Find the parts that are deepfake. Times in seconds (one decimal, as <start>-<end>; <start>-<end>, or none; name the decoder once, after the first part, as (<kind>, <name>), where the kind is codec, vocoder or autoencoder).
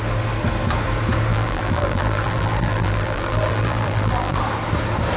1.3-4.4 (vocoder, BigVGAN v2)